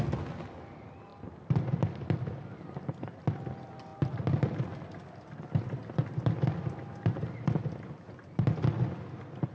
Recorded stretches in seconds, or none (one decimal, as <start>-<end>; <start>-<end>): 0.0-1.1; 3.2-3.9; 8.7-9.5